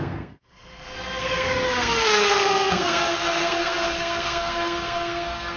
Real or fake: fake